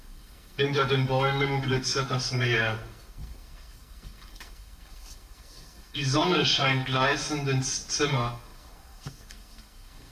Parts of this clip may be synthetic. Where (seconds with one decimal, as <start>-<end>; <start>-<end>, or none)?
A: 0.0-7.2; 8.1-10.1